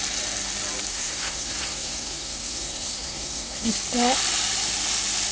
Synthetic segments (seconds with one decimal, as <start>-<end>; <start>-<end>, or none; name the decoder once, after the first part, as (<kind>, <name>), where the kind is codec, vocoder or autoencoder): 0.9-3.7 (codec, SNAC)